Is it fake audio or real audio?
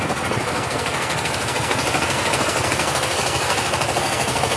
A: fake